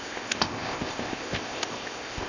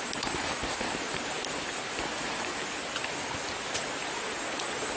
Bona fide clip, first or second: second